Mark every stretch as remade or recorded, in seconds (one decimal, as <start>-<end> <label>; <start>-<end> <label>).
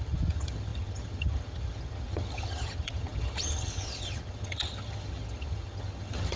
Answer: 0.0-6.4 remade